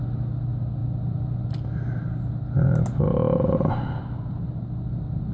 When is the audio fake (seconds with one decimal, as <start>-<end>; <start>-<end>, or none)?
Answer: none